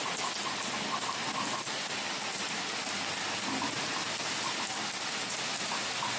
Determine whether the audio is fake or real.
real